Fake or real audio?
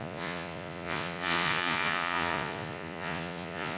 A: fake